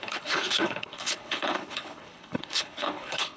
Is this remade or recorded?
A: remade